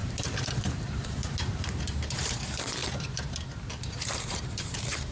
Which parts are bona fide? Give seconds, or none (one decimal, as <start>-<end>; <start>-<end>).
2.8-4.2